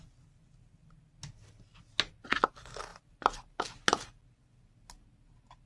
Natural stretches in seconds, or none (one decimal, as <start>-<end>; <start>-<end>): 0.0-5.7